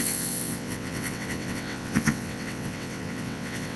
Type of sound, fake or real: fake